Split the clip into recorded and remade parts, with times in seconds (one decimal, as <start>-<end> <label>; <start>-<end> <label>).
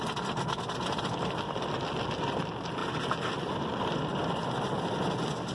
0.0-5.5 recorded